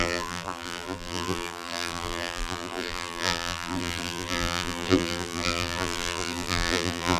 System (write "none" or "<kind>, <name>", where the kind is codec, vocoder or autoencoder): vocoder, BigVGAN v2